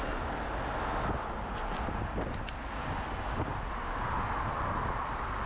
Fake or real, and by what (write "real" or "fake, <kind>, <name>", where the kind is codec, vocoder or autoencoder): real